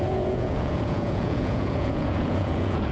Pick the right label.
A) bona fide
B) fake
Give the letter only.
B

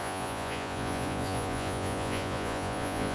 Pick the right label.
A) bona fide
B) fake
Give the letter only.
B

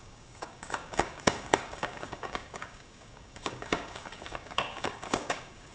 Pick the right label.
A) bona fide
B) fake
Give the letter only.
B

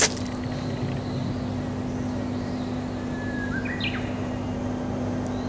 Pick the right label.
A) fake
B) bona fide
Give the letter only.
B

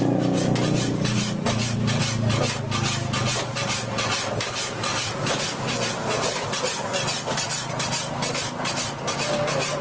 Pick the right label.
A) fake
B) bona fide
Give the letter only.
B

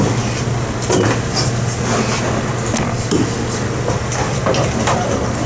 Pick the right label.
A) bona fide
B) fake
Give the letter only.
A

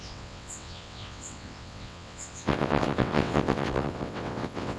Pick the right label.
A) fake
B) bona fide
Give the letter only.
A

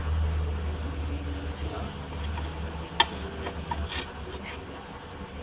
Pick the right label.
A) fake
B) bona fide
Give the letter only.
B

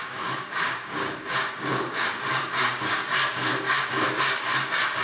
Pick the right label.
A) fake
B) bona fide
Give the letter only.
A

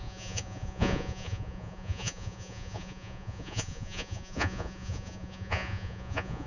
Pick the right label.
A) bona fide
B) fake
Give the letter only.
B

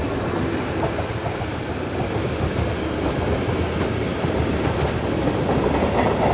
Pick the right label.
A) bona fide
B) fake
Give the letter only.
A